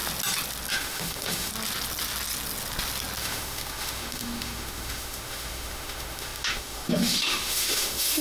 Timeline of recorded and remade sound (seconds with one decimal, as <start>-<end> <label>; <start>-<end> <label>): 0.0-0.7 recorded; 0.7-1.5 remade; 1.5-3.2 recorded; 3.2-8.2 remade